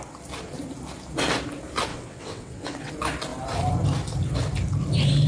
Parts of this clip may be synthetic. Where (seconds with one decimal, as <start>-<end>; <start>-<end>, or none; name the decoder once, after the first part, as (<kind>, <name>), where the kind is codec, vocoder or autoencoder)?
1.9-2.9 (vocoder, WaveNeXt)